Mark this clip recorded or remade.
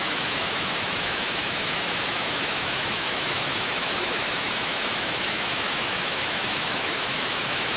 remade